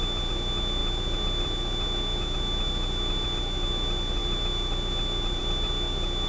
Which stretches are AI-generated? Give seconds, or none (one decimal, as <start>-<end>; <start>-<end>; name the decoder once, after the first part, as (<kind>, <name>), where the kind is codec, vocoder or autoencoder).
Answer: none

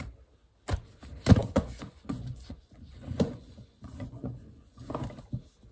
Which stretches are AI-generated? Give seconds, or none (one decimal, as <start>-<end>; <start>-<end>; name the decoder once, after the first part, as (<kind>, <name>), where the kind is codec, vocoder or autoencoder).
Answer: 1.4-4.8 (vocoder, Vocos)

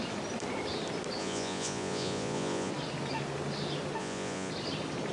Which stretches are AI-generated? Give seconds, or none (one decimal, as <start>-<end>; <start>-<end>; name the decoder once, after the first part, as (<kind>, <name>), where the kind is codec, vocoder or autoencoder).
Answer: 1.2-2.7 (vocoder, Vocos); 4.0-4.5